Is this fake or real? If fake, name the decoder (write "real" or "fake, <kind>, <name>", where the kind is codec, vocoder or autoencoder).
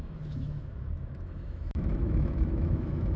fake, autoencoder, DAC-VAE